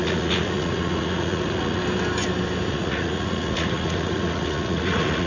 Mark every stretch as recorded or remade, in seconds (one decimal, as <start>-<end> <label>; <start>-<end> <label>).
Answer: 0.0-1.8 remade; 1.8-2.7 recorded; 2.7-5.3 remade